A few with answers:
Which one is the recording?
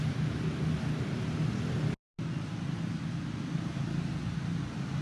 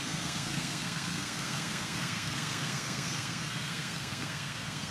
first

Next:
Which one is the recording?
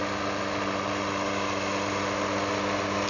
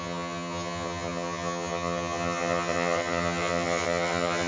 first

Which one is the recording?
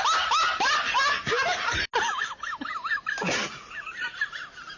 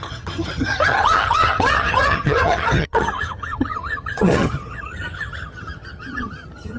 first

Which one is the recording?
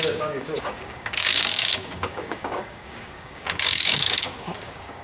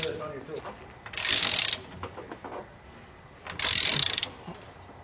second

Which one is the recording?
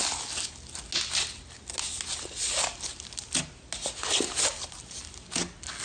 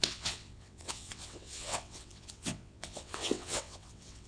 first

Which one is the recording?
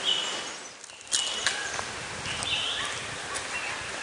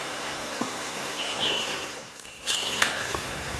first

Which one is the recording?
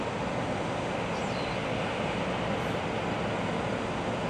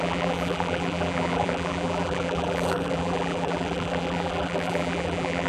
first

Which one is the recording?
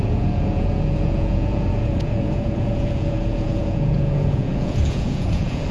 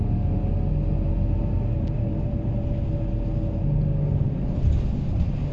second